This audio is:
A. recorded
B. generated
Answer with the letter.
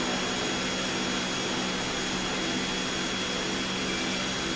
A